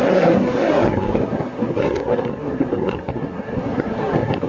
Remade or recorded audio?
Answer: remade